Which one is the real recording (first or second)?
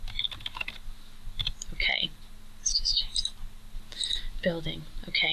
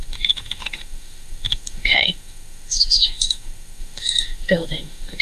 first